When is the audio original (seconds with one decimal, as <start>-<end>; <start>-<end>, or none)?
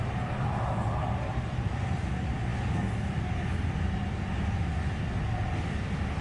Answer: 0.0-6.2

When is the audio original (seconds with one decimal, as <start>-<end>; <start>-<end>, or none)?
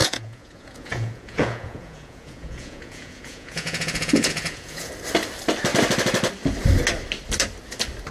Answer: 4.9-8.1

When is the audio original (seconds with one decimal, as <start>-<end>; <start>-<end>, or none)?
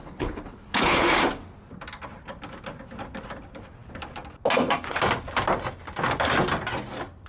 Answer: 1.2-7.3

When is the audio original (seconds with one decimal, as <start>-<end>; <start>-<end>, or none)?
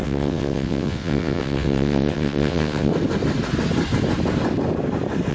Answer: 2.9-5.3